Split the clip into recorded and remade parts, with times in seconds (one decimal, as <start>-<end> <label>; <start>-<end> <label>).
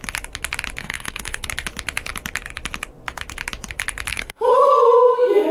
0.0-0.8 recorded; 0.8-1.5 remade; 1.5-4.1 recorded; 4.1-4.7 remade; 4.7-5.5 recorded